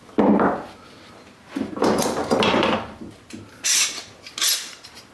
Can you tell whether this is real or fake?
real